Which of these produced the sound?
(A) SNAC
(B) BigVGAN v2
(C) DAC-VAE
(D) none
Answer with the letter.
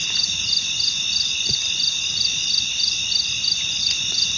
B